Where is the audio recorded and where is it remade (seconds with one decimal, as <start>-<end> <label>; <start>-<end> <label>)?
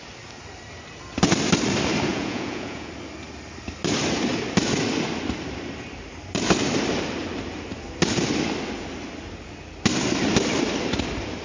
0.0-2.1 recorded; 2.1-2.9 remade; 2.9-11.4 recorded